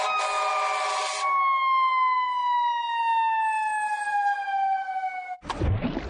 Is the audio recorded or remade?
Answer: recorded